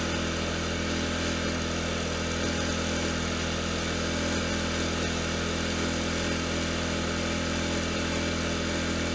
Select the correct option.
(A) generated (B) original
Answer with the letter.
B